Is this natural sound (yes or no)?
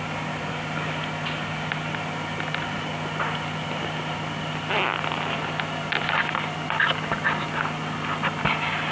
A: yes